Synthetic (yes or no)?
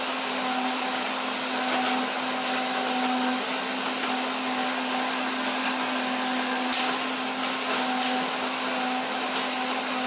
no